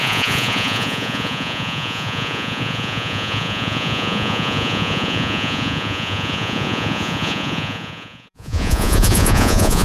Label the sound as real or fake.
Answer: fake